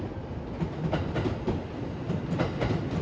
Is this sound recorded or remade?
recorded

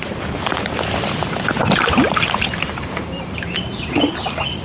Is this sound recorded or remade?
remade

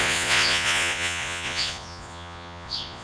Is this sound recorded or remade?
remade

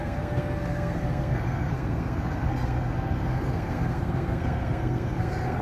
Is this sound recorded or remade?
remade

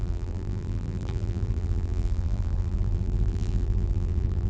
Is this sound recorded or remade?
remade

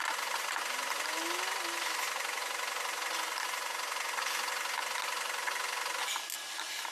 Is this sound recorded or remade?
recorded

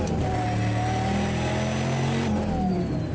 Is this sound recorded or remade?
recorded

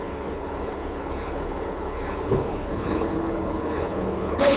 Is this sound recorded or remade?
remade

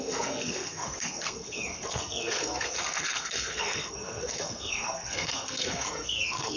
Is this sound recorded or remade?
remade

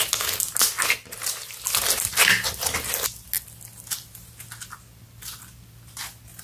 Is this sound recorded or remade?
recorded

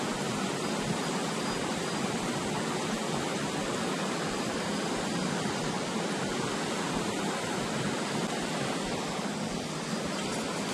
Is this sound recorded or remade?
recorded